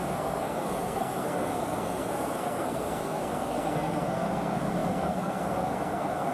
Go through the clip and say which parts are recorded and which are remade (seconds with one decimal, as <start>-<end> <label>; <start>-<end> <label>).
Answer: 0.0-6.3 remade